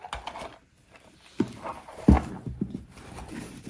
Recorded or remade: recorded